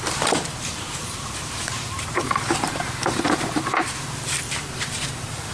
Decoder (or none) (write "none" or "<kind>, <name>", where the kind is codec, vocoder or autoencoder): vocoder, BigVGAN v2